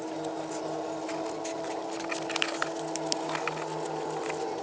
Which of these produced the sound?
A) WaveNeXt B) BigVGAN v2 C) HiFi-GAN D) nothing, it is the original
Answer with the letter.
D